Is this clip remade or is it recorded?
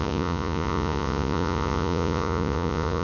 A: remade